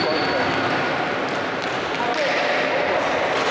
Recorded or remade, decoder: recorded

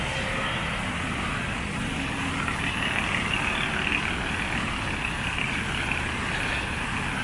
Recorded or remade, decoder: recorded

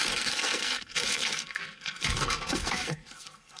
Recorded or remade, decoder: remade, codec, SNAC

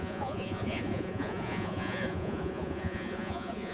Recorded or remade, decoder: remade, vocoder, Vocos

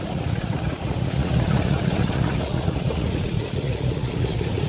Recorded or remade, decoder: remade, vocoder, Vocos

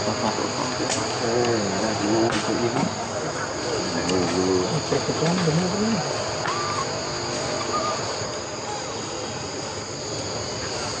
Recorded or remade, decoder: recorded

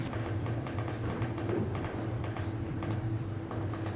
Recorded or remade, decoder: remade, vocoder, BigVGAN v2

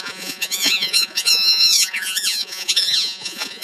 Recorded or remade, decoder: remade, vocoder, Vocos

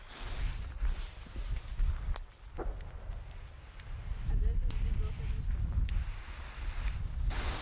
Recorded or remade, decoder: recorded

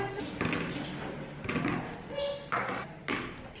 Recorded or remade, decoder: recorded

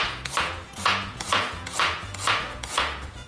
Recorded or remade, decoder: remade, vocoder, Vocos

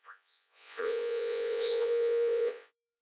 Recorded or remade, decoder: remade, vocoder, Vocos